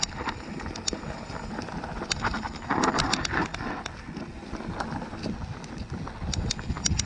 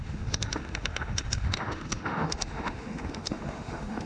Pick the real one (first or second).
first